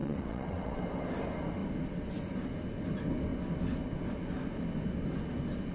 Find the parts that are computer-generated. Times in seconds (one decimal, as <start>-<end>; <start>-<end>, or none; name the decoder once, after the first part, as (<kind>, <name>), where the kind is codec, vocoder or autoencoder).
0.0-0.8 (vocoder, WaveNeXt)